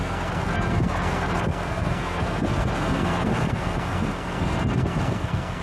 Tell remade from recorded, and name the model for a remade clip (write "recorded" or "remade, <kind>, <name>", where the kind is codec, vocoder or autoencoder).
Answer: remade, codec, SNAC